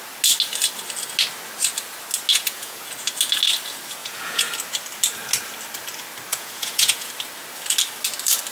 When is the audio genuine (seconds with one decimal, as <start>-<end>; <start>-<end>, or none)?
0.0-2.3; 2.9-4.0; 4.5-6.3; 7.1-8.5